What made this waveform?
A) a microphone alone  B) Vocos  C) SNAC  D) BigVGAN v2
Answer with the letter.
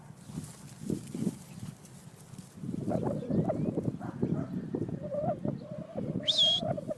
A